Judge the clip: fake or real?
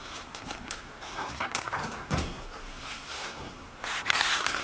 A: fake